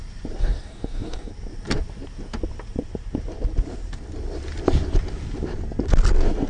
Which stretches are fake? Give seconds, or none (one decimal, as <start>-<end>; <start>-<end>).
0.4-1.3